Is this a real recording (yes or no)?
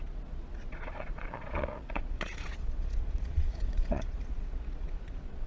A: no